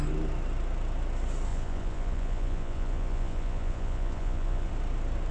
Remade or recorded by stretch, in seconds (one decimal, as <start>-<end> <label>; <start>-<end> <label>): 0.0-1.5 recorded; 1.5-4.7 remade; 4.7-5.3 recorded